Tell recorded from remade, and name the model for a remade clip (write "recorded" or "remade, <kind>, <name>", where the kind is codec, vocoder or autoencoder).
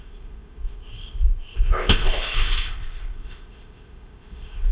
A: remade, codec, ZipCodec